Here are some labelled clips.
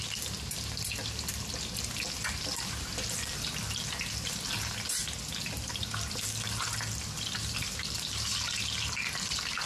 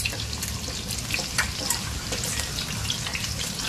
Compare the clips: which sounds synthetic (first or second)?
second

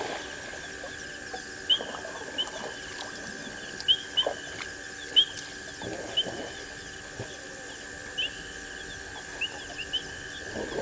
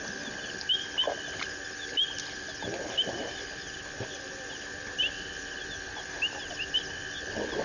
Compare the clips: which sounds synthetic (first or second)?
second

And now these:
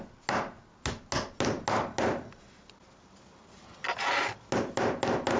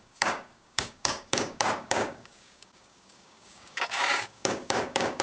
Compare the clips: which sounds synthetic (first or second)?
second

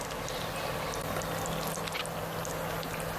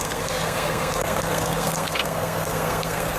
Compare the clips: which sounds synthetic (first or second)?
second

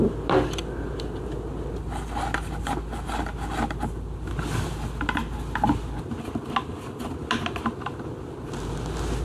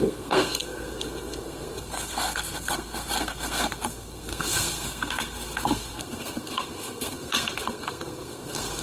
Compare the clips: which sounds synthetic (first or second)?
second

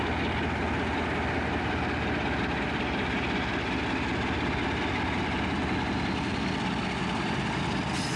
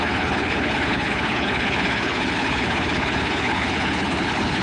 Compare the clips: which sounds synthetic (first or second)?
second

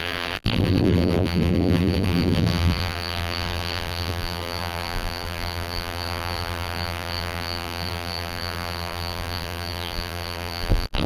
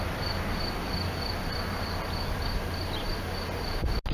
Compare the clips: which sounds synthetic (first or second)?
first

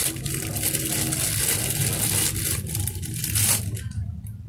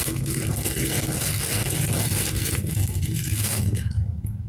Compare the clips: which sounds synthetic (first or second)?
second